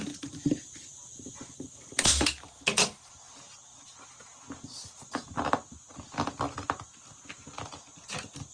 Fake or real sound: real